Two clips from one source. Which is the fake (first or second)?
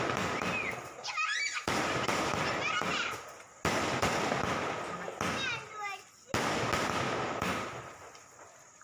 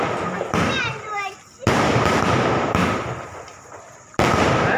second